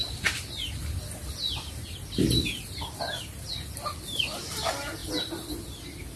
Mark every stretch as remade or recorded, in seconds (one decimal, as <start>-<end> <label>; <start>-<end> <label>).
0.0-6.2 recorded